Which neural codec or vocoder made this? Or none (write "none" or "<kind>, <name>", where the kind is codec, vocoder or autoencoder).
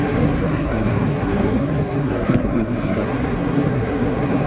codec, SNAC